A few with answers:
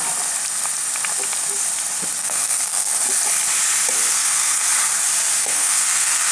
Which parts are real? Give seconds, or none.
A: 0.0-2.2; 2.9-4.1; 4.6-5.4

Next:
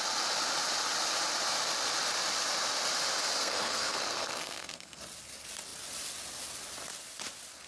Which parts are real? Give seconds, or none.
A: 0.0-3.4; 5.0-7.7

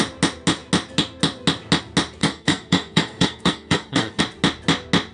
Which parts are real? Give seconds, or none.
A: 0.0-2.2; 4.2-5.1

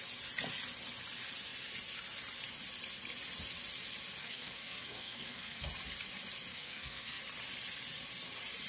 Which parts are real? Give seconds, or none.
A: 0.0-4.2; 5.6-6.5; 7.2-8.7

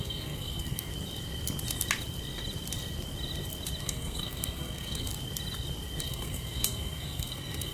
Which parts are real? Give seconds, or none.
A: 0.9-3.8; 5.1-6.0